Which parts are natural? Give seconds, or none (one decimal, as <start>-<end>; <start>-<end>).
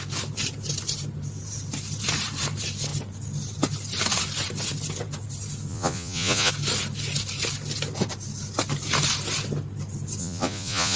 0.0-5.7; 6.5-10.2